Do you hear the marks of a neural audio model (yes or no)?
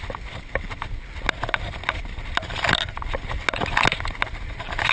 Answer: no